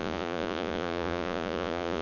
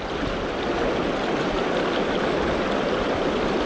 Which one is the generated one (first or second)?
first